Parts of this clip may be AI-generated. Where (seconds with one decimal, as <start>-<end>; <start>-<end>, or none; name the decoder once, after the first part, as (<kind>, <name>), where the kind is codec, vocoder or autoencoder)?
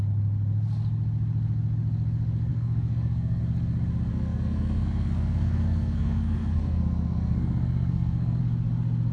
2.5-3.4 (codec, SNAC); 4.1-8.4